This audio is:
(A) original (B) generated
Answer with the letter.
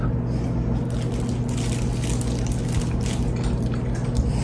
A